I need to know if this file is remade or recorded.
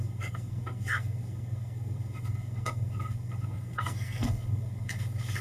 remade